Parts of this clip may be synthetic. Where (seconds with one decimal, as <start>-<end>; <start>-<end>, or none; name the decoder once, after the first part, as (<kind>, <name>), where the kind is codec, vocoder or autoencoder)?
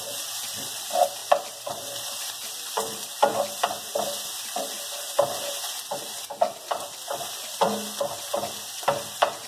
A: 0.0-3.3 (vocoder, BigVGAN v2); 5.8-9.5